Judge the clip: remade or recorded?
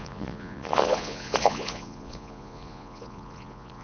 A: remade